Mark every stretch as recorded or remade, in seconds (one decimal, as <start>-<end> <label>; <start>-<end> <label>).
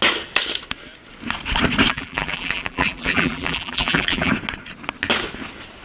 0.0-1.9 recorded; 1.9-4.3 remade; 4.3-5.8 recorded